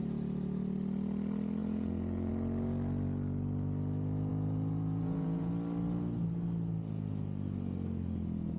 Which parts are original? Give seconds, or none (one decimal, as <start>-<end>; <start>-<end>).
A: 0.0-1.6; 2.3-4.3; 5.5-8.6